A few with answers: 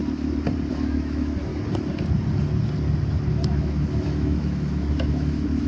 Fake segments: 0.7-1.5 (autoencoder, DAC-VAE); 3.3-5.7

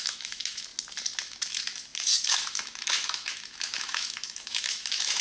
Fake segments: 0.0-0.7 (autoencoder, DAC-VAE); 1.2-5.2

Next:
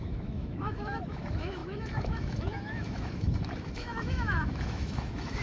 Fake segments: 0.0-5.4 (autoencoder, DAC-VAE)

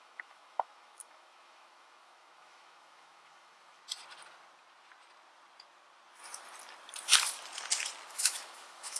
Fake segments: 0.0-3.8 (autoencoder, DAC-VAE); 8.1-9.0

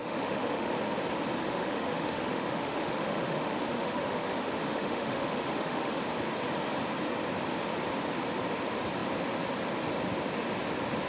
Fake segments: 0.0-0.7 (autoencoder, DAC-VAE); 1.4-6.0